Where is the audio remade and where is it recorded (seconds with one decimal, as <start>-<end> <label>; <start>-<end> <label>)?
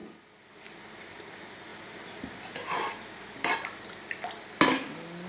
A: 0.0-5.3 recorded